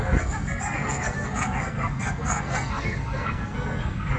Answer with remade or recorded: remade